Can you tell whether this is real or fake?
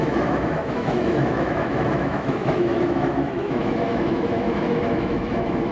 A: fake